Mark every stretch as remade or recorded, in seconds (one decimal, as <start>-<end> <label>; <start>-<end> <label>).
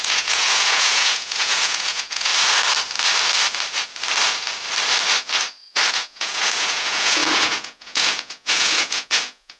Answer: 0.0-2.3 remade; 2.3-5.9 recorded; 5.9-9.6 remade